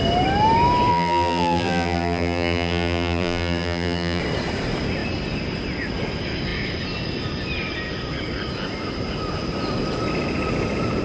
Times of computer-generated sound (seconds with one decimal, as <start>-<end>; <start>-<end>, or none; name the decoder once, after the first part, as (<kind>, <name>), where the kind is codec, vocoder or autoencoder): 0.9-4.2 (vocoder, BigVGAN v2)